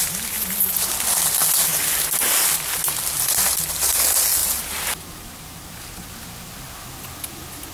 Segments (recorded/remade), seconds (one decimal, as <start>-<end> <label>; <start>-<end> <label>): 0.0-4.4 recorded; 4.4-6.2 remade; 6.2-7.7 recorded

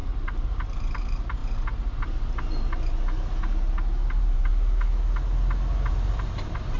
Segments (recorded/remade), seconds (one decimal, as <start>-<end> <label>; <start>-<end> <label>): 0.0-1.4 remade; 1.4-4.1 recorded; 4.1-4.5 remade; 4.5-5.9 recorded; 5.9-6.8 remade